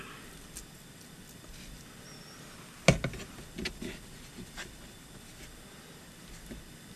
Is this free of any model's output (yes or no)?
yes